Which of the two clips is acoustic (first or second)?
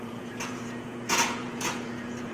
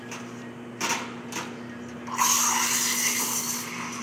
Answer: second